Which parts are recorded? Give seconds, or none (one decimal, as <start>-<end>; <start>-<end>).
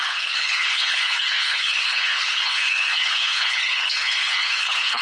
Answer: none